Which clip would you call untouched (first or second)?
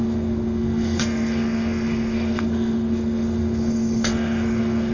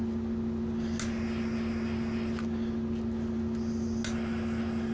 second